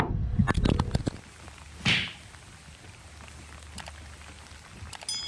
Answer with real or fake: real